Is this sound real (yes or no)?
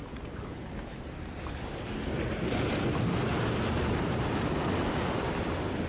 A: yes